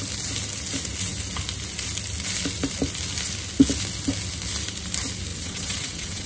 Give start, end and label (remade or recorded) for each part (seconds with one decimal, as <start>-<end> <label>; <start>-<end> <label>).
0.0-5.3 recorded; 5.3-6.3 remade